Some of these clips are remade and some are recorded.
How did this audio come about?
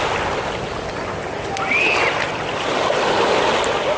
recorded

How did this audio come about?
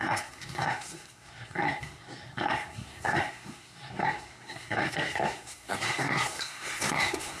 remade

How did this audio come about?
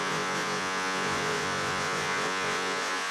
remade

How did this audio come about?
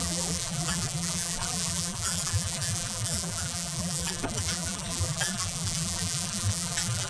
remade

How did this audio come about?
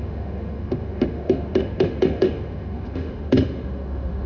remade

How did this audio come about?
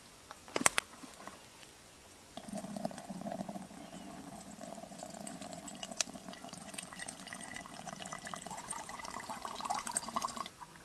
remade